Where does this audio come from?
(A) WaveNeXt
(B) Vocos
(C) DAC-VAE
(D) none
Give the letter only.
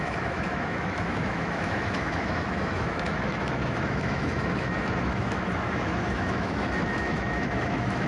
C